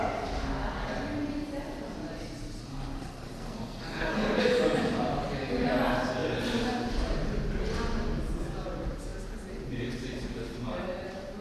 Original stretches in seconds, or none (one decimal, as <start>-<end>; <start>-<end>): 0.0-2.7; 4.4-11.4

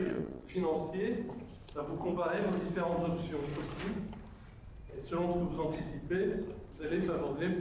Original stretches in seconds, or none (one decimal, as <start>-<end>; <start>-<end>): 0.5-7.6

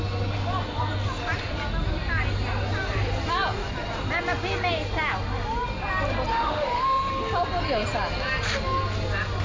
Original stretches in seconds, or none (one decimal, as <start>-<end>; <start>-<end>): 0.0-6.3; 7.1-9.4

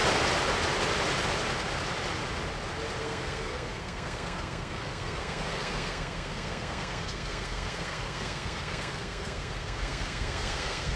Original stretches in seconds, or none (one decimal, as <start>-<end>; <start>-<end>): 0.0-3.0

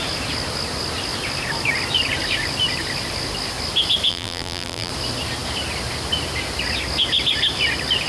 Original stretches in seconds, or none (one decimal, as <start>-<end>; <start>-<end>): 0.0-4.1; 4.9-8.1